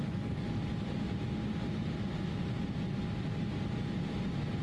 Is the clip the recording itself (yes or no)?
yes